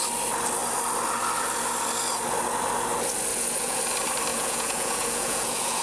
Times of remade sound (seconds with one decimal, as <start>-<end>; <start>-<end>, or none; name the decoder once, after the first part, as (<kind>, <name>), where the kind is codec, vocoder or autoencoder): 3.3-3.8 (vocoder, Vocos); 4.3-5.8